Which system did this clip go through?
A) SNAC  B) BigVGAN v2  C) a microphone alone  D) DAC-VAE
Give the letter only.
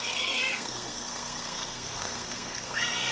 A